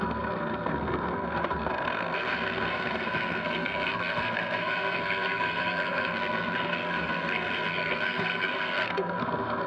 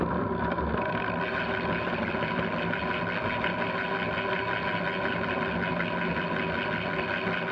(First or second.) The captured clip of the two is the second